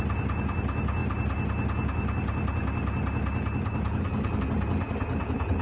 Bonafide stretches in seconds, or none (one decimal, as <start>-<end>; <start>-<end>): 0.0-5.6